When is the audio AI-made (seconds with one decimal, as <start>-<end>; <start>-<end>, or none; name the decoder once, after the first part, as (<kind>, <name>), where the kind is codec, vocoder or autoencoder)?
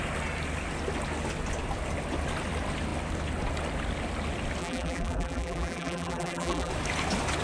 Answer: 4.6-6.7 (vocoder, BigVGAN v2)